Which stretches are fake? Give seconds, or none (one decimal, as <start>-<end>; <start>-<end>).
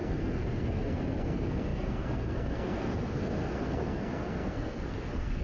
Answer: 0.0-5.4